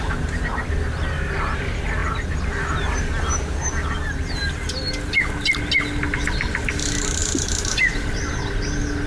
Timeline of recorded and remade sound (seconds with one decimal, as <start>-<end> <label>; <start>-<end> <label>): 0.0-9.1 recorded